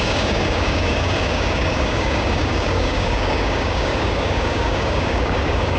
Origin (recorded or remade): remade